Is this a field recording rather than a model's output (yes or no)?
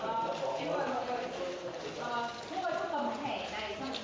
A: yes